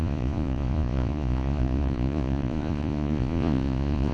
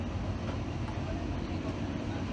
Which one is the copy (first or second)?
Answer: first